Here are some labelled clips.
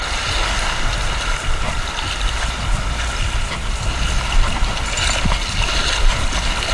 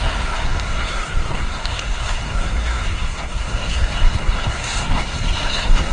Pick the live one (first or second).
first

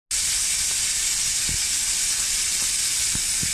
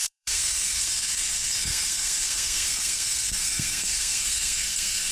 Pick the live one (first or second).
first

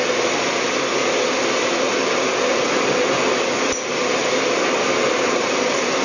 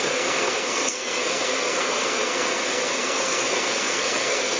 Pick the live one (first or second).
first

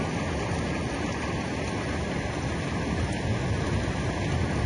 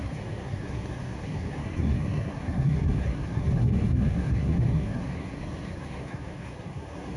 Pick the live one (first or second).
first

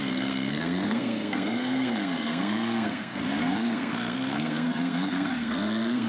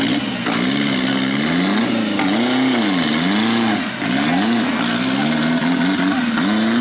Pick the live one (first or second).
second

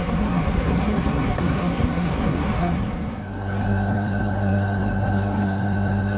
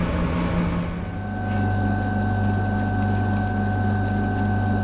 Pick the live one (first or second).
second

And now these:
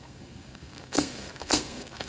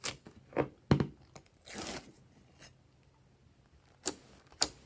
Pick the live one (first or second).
second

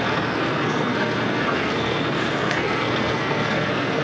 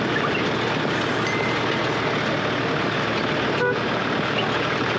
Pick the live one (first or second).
second